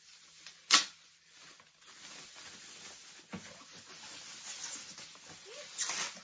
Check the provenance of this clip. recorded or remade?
recorded